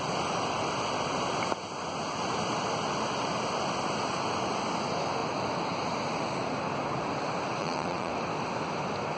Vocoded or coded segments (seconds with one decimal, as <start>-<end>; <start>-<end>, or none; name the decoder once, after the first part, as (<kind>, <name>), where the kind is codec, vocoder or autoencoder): 7.6-8.1 (vocoder, Vocos)